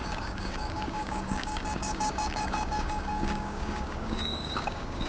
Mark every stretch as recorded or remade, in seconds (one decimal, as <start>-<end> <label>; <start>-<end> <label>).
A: 0.0-5.1 remade